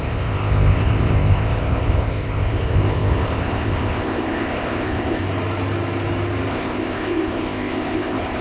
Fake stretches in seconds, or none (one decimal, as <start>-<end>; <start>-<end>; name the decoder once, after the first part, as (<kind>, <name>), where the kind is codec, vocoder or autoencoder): 0.0-5.2 (codec, ZipCodec); 6.5-8.4